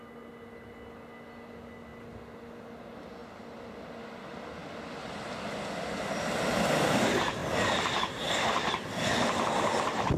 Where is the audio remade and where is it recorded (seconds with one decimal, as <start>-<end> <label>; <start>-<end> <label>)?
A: 0.0-10.2 recorded